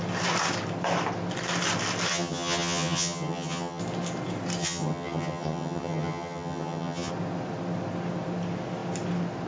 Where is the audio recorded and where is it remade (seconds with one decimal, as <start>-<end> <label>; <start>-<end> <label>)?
0.0-2.1 recorded; 2.1-3.8 remade; 3.8-4.6 recorded; 4.6-7.1 remade; 7.1-9.5 recorded